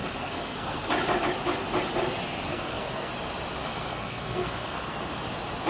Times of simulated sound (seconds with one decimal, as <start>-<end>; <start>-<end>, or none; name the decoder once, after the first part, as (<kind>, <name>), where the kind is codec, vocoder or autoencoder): 0.0-0.9 (codec, SNAC); 2.5-3.1; 3.6-5.0